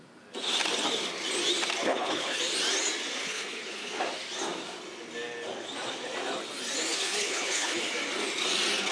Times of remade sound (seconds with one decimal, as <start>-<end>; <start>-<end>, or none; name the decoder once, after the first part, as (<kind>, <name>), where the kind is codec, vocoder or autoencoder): 1.9-2.4 (codec, HILCodec); 3.2-3.9; 6.9-7.9